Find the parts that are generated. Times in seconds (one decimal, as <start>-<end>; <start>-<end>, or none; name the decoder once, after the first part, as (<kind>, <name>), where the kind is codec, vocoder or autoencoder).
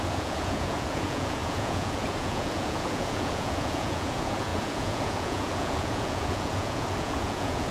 0.0-7.7 (vocoder, Vocos)